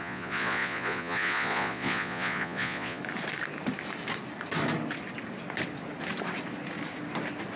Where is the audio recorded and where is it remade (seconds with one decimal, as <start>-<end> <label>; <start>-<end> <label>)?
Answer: 0.0-3.0 remade; 3.0-7.6 recorded